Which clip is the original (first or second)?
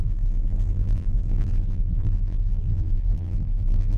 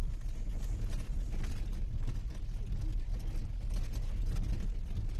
second